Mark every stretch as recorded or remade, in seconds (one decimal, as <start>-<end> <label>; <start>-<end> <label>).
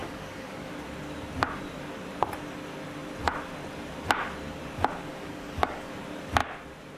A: 0.0-0.7 remade; 0.7-5.1 recorded; 5.1-5.9 remade; 5.9-7.0 recorded